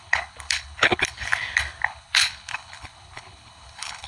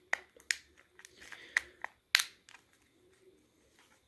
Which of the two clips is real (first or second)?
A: second